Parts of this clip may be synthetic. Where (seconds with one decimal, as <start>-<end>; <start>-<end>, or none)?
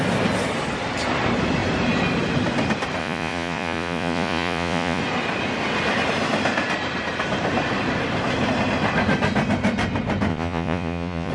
3.0-5.0; 10.3-11.3